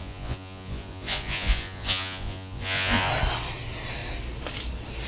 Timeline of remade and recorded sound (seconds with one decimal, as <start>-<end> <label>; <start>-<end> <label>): 0.0-3.1 remade; 3.1-5.1 recorded